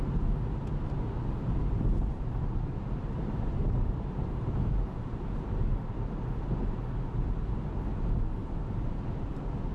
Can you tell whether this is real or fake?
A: real